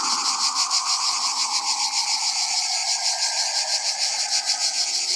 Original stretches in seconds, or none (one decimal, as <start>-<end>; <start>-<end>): 0.0-5.2

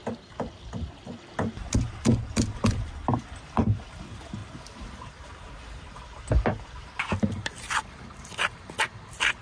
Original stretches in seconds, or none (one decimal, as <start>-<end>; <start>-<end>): 0.0-4.4; 5.5-9.4

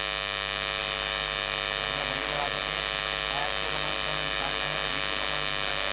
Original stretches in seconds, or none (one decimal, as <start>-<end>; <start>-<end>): 0.0-0.8; 2.6-3.4; 4.9-5.9

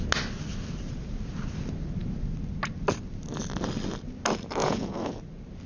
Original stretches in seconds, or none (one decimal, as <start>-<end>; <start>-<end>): 0.0-4.6; 5.2-5.7

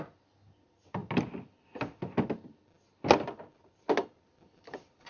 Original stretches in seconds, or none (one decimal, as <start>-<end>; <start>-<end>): 0.0-5.1

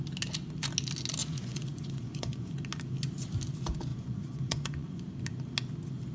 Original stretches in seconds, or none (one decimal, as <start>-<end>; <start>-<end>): 0.0-1.2; 2.5-3.9; 5.0-6.1

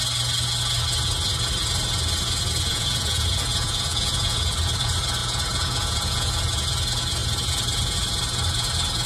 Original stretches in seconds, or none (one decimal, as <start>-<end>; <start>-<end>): 0.0-2.7; 4.5-5.2; 6.3-9.1